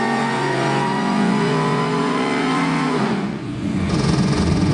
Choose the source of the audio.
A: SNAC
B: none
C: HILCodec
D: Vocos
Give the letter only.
D